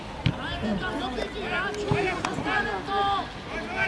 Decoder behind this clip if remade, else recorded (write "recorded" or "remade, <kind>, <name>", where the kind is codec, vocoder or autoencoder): recorded